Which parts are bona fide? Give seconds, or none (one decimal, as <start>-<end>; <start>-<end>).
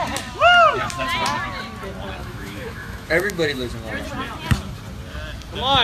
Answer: 0.0-2.2; 3.7-5.8